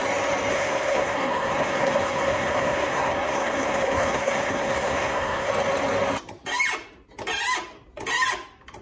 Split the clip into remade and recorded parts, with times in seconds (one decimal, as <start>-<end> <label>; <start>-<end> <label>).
0.0-0.5 recorded; 0.5-5.5 remade; 5.5-8.8 recorded